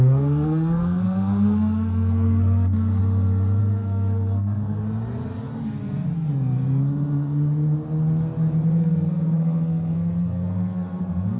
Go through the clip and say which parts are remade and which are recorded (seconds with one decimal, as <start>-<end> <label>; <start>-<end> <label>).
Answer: 0.0-3.0 remade; 3.0-3.6 recorded; 3.6-4.8 remade; 4.8-8.8 recorded; 8.8-11.4 remade